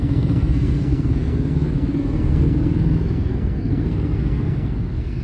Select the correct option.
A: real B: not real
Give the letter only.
B